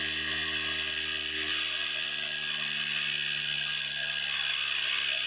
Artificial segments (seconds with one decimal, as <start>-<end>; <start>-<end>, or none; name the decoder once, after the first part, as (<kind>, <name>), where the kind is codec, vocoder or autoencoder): none